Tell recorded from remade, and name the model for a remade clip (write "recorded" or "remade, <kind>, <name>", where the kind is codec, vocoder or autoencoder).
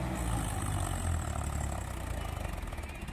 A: recorded